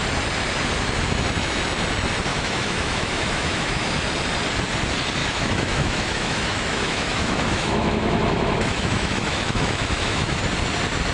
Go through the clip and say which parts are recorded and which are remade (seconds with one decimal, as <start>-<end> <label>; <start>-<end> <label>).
0.0-2.3 recorded; 2.3-3.9 remade; 3.9-5.2 recorded; 5.2-10.4 remade; 10.4-11.1 recorded